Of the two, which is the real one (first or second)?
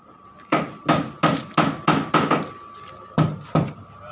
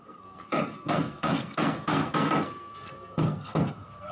first